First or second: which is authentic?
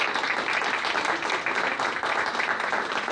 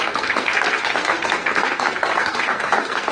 first